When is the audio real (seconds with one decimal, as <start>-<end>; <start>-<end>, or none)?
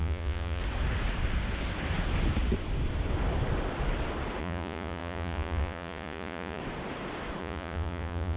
0.6-4.4; 6.6-7.4